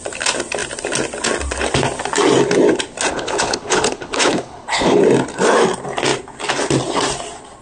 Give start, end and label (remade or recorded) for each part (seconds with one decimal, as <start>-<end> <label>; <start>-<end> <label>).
0.0-3.1 recorded; 3.1-5.0 remade; 5.0-7.6 recorded